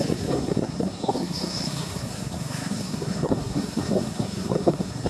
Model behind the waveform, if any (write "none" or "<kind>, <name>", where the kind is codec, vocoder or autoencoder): codec, SNAC